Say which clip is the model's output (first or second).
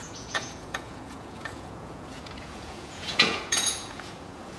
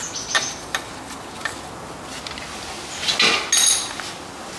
first